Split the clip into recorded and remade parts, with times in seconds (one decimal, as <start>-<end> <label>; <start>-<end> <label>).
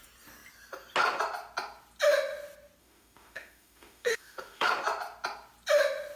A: 0.0-2.8 recorded; 2.8-4.7 remade; 4.7-6.2 recorded